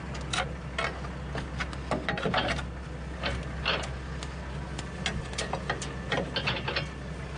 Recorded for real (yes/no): yes